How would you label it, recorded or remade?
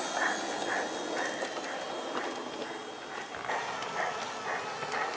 recorded